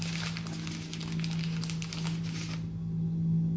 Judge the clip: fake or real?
real